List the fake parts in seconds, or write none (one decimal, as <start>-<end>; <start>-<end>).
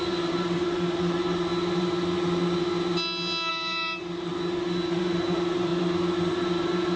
0.0-1.5; 3.5-4.3; 4.9-5.7; 6.3-7.0